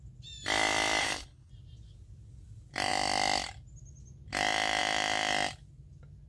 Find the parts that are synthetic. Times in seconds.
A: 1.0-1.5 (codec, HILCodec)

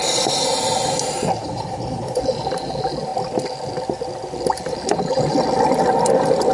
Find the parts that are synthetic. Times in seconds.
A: 1.4-2.2 (codec, HILCodec)

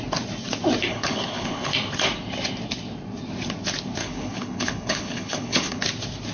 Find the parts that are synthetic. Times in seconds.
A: 0.9-1.7 (codec, HILCodec); 4.0-5.8

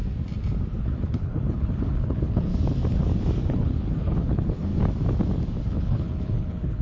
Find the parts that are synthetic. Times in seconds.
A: 0.8-2.5 (codec, HILCodec); 3.5-4.7; 5.6-6.8

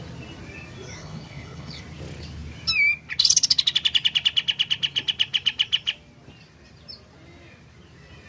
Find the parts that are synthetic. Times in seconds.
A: 1.0-1.8 (codec, HILCodec)

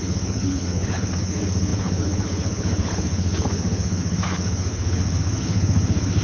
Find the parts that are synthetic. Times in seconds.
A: 0.0-6.2 (codec, HILCodec)